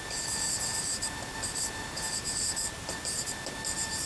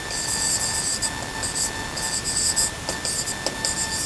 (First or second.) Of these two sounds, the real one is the second